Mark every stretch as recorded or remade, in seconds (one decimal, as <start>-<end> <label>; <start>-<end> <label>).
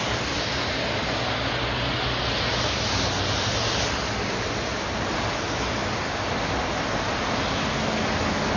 0.0-8.6 recorded